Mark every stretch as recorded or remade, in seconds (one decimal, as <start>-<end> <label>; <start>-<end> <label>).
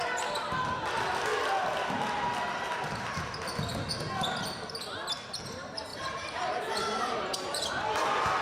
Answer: 0.0-5.9 recorded; 5.9-7.7 remade; 7.7-8.4 recorded